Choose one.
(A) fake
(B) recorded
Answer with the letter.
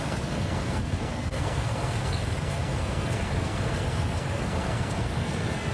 A